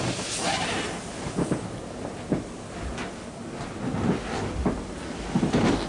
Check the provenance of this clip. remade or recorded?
recorded